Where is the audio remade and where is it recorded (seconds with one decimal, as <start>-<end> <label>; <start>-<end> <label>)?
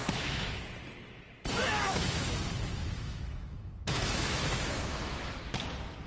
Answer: 0.0-0.6 remade; 0.6-1.6 recorded; 1.6-5.3 remade; 5.3-6.1 recorded